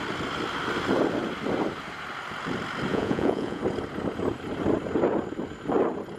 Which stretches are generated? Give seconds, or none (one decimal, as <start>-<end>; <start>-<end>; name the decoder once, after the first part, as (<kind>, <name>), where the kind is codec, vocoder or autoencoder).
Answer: 2.9-3.6 (vocoder, Vocos)